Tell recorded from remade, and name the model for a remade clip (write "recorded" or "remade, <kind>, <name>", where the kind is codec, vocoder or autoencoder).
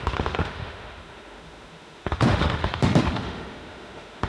remade, autoencoder, DAC-VAE